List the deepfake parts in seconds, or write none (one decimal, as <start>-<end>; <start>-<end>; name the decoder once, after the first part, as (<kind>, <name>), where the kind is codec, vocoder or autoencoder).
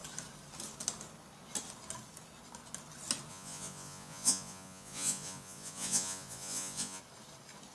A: 3.3-7.0 (vocoder, Vocos)